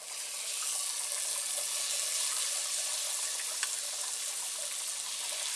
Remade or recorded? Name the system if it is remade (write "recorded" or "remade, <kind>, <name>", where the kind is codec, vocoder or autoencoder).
recorded